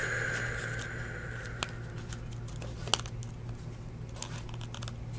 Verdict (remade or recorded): recorded